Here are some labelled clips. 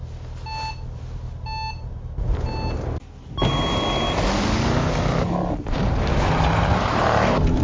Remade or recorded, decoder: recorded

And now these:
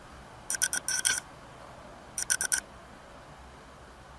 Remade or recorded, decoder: recorded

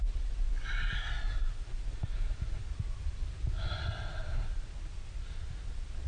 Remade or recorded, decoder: recorded